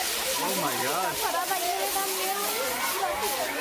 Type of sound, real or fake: real